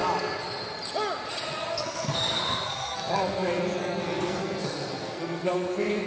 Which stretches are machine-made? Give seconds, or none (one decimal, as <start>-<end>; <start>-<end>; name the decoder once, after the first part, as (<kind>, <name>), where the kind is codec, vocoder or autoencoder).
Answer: 1.7-6.1 (codec, SNAC)